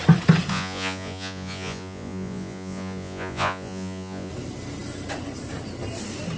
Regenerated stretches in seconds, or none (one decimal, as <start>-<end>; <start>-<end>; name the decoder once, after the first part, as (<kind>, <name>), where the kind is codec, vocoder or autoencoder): 0.5-4.3 (vocoder, Vocos)